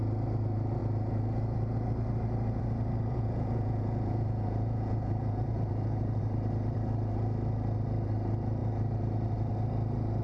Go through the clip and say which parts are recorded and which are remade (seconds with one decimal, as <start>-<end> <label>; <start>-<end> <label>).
0.0-3.1 recorded; 3.1-6.2 remade; 6.2-10.2 recorded